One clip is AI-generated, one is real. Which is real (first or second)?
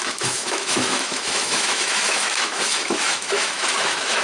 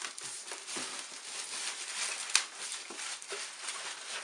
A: second